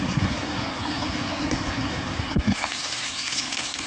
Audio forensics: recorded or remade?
remade